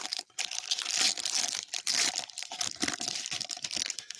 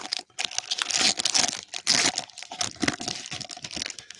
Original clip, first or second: second